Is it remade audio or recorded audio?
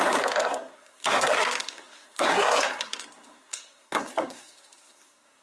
remade